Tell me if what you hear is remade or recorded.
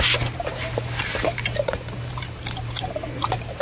remade